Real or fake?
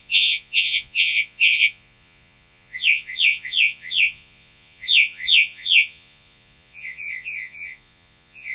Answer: fake